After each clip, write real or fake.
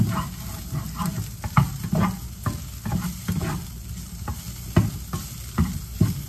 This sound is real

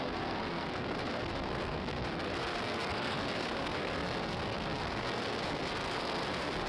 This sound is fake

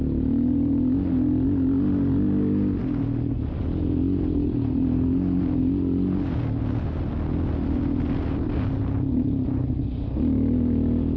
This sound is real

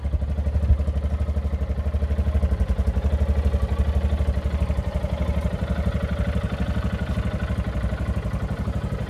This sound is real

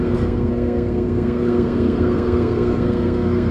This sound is fake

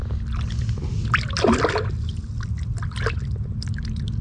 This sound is real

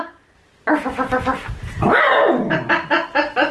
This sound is real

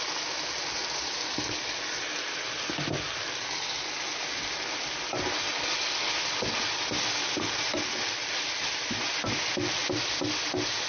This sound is real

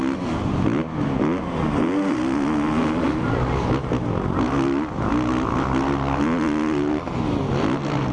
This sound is real